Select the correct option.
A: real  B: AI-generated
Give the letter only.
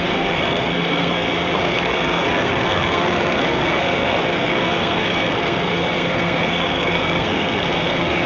B